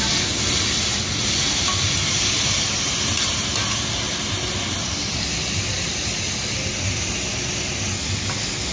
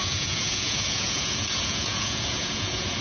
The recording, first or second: first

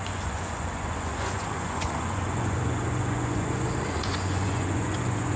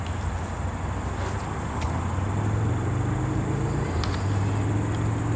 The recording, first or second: second